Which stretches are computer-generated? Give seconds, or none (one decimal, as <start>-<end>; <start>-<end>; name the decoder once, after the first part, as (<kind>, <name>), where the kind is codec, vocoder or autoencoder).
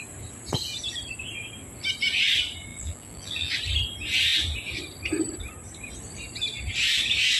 2.7-3.5 (vocoder, BigVGAN v2)